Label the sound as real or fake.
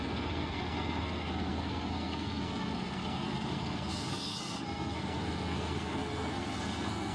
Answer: fake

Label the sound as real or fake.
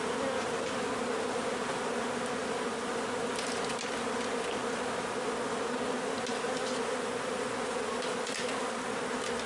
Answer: real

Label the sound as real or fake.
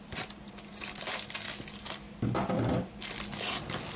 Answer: real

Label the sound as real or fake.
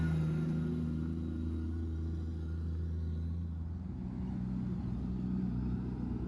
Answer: real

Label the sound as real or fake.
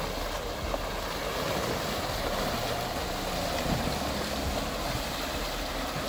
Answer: real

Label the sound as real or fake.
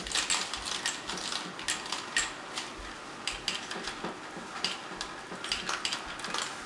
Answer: real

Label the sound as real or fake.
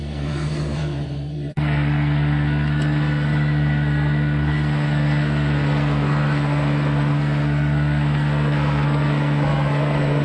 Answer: fake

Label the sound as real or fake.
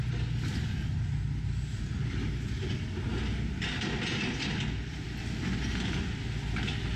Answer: real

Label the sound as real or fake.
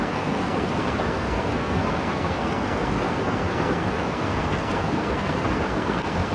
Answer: fake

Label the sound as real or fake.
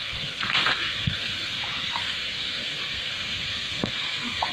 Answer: fake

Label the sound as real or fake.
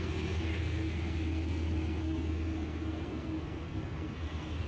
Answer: fake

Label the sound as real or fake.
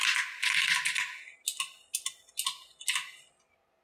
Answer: real